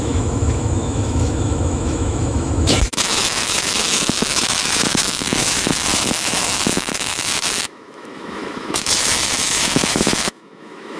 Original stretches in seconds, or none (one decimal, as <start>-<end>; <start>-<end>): none